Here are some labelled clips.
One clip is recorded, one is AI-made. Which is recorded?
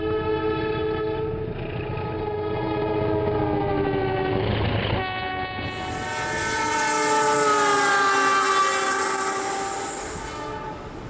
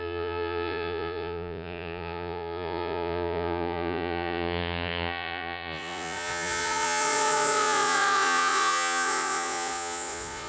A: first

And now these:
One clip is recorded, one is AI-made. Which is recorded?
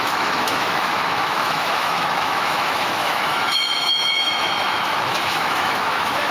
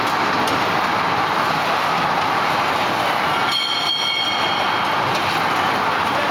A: second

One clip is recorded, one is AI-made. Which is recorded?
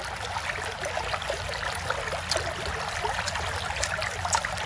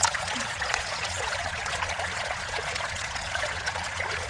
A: first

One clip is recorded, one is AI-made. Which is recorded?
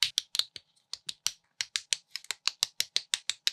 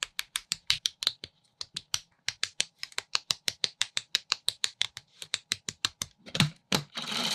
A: first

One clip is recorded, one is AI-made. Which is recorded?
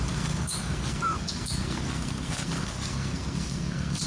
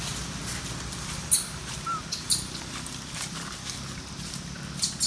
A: second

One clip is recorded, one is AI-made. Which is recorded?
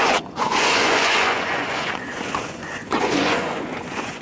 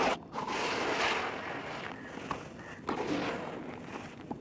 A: second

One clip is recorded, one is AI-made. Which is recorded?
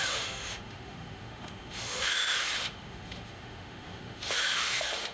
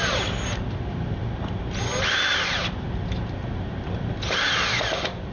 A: second